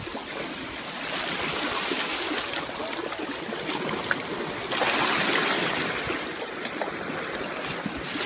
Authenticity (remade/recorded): recorded